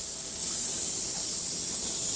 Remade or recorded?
recorded